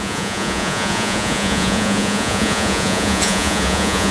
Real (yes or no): no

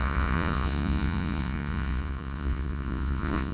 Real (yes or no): no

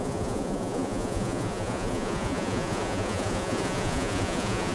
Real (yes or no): no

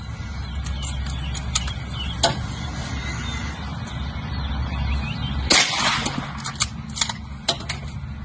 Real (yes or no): yes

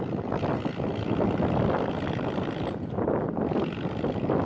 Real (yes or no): yes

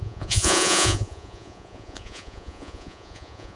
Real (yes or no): no